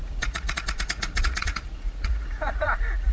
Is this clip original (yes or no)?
no